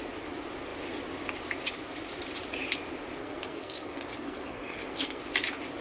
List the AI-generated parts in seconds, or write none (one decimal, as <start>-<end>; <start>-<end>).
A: 3.2-5.2